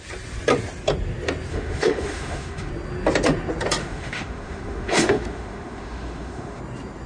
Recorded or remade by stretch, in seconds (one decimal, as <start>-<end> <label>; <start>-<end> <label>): 0.0-1.5 recorded; 1.5-2.7 remade; 2.7-3.8 recorded; 3.8-6.6 remade; 6.6-7.1 recorded